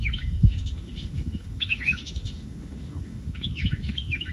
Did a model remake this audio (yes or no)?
yes